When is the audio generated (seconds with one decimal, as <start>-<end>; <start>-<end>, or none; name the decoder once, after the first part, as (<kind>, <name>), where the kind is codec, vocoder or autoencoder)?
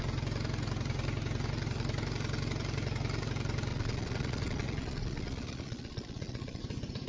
3.7-6.6 (vocoder, Vocos)